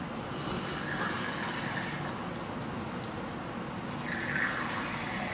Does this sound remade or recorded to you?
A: recorded